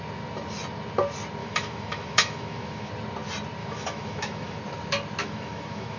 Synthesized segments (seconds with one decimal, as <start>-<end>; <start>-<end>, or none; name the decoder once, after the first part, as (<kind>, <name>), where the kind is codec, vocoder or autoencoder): 1.4-2.9 (autoencoder, DAC-VAE); 3.6-4.6; 5.2-6.0